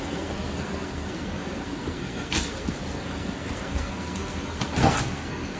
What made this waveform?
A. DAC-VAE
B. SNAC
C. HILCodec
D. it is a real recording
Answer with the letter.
B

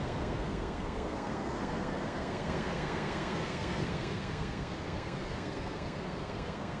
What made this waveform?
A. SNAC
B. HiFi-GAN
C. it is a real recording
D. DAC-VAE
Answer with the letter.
A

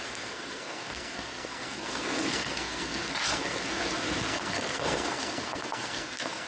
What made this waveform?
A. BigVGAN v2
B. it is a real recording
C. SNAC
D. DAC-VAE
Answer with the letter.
C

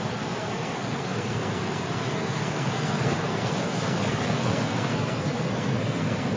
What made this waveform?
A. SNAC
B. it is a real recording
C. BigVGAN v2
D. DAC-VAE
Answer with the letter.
A